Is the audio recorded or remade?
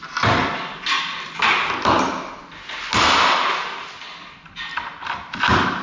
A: recorded